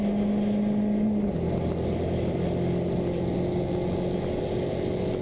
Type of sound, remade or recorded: recorded